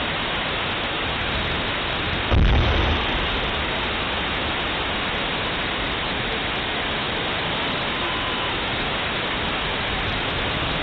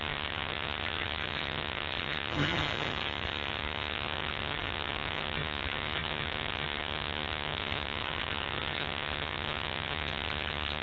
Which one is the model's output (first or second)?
second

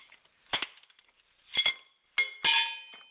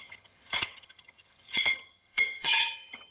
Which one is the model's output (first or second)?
second